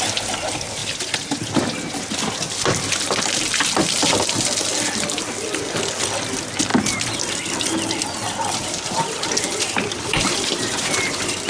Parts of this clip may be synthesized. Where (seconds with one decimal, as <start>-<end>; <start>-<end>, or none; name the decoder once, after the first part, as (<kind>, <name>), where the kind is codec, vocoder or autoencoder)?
none